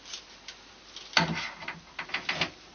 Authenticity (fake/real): real